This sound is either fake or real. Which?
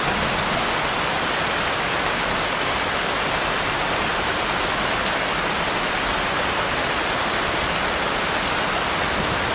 real